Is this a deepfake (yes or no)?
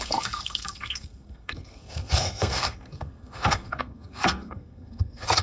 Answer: yes